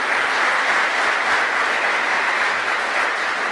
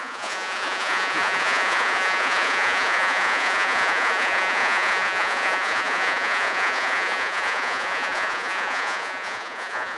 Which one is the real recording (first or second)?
first